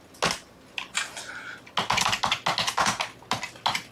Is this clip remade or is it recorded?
recorded